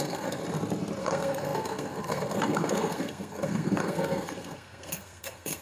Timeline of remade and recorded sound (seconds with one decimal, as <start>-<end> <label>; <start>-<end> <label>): 0.0-0.4 remade; 0.4-1.0 recorded; 1.0-5.6 remade